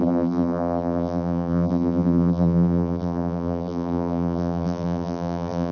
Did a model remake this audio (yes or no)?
yes